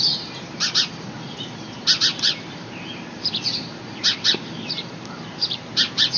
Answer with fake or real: fake